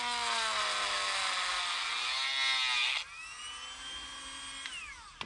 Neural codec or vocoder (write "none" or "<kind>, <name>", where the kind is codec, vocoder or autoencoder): none